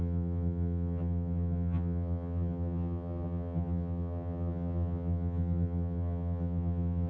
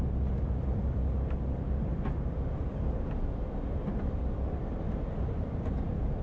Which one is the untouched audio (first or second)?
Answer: second